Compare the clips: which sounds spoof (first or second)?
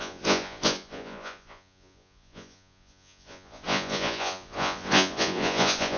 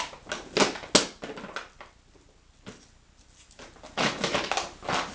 first